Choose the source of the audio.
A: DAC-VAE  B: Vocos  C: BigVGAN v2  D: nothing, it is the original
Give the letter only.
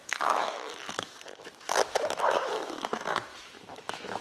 A